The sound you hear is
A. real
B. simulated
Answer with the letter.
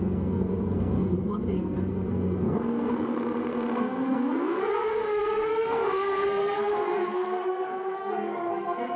B